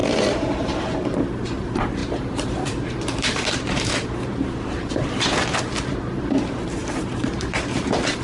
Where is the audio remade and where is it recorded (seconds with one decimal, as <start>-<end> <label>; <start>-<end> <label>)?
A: 0.0-1.2 remade; 1.2-2.0 recorded; 2.0-5.6 remade; 5.6-6.8 recorded; 6.8-7.6 remade; 7.6-8.2 recorded